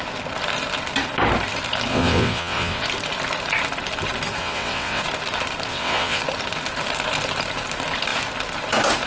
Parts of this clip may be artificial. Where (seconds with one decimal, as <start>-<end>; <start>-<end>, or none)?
1.9-2.8; 4.4-5.0; 5.7-6.2